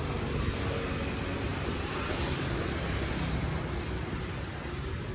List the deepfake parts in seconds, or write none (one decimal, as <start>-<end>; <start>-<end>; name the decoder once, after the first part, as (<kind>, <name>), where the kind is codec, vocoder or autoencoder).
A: none